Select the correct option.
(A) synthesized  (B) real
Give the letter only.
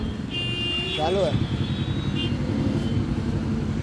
B